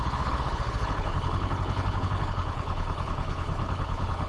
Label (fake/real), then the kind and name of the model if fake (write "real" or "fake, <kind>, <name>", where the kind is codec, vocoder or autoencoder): fake, codec, HILCodec